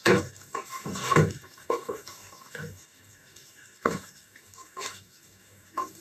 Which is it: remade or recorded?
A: remade